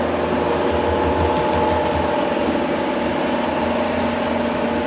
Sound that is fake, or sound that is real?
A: real